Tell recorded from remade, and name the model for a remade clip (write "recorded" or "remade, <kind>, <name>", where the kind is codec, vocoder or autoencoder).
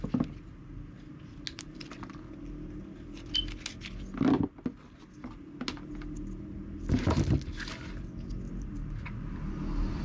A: recorded